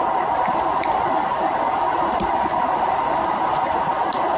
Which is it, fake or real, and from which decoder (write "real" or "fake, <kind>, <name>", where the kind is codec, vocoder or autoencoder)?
fake, vocoder, BigVGAN v2